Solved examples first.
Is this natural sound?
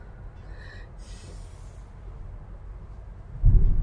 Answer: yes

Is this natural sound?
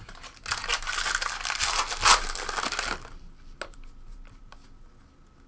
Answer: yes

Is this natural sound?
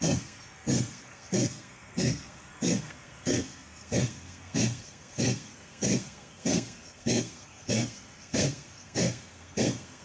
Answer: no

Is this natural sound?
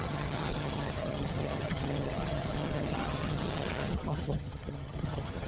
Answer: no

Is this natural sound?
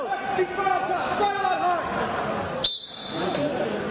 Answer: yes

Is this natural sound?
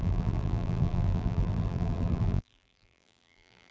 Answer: no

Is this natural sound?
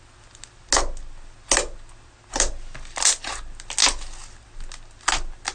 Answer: yes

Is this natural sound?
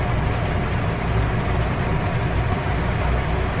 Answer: yes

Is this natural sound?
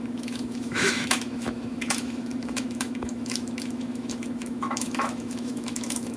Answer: no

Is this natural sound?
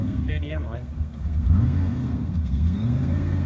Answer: no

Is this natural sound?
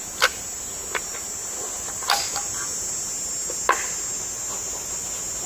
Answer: yes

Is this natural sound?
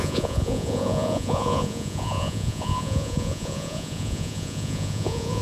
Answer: no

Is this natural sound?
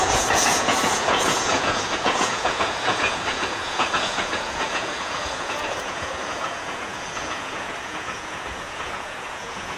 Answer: no